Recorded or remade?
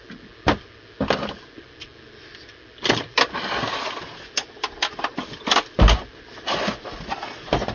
recorded